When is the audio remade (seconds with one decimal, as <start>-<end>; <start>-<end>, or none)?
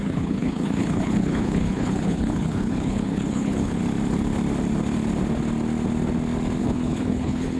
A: 0.0-3.8; 6.6-7.6